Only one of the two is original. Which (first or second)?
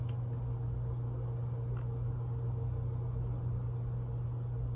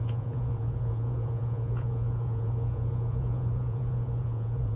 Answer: first